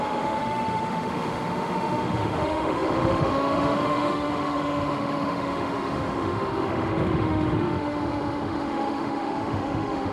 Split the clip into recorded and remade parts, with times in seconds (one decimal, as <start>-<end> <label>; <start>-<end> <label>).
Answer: 0.0-10.1 remade